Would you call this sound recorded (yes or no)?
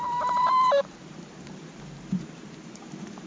no